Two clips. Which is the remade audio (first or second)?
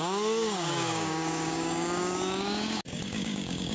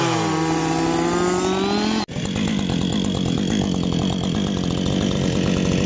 first